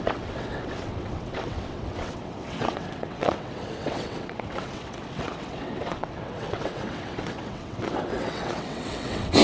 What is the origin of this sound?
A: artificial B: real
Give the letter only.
A